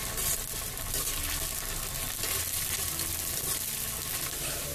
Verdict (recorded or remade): recorded